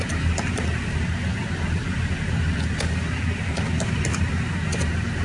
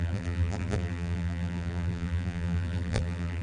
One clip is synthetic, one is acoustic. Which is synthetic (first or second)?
second